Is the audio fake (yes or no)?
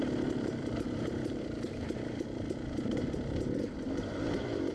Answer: yes